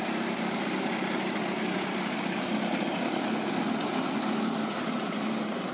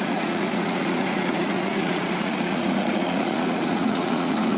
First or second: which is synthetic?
second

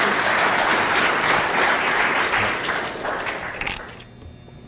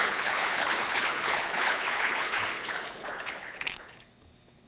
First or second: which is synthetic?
second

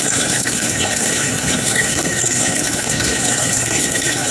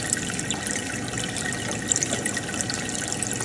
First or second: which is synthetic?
first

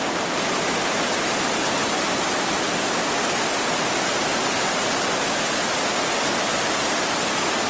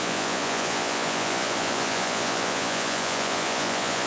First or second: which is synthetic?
second